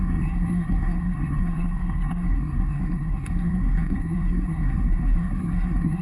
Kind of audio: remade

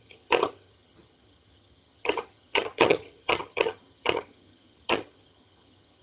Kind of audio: remade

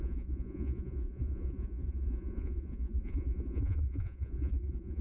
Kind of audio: remade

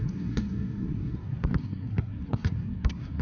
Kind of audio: remade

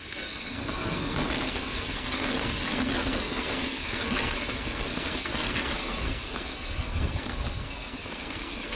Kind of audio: remade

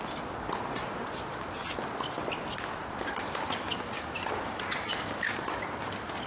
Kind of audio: recorded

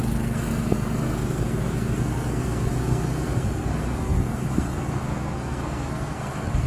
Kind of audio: remade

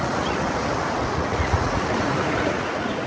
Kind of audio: remade